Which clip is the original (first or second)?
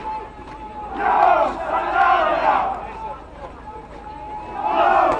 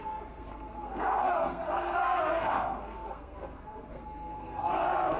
first